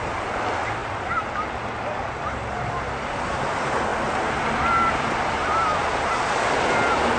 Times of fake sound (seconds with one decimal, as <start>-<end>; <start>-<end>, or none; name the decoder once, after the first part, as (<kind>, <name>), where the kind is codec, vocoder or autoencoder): none